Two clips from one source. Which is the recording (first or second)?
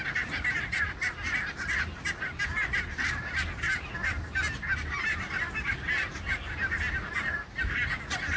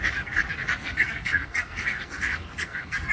first